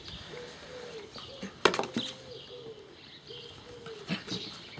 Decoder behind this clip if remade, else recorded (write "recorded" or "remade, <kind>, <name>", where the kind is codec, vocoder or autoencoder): recorded